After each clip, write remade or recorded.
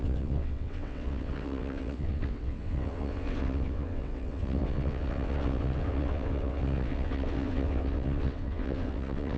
remade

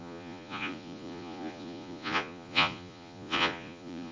remade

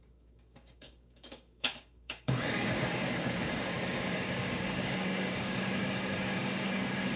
remade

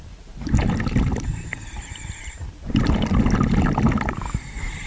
recorded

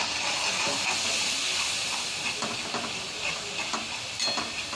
recorded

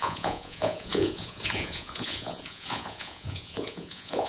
remade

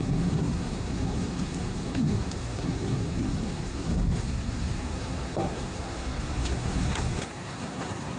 remade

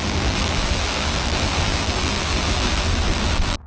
remade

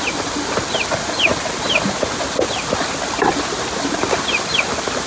recorded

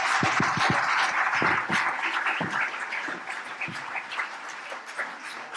recorded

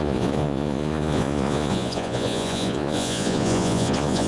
remade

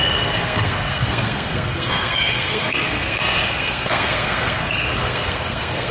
remade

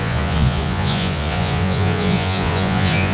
remade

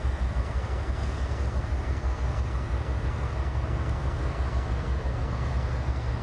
remade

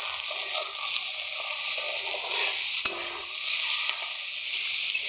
recorded